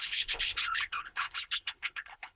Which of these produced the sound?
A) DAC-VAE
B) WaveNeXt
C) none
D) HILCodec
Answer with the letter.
D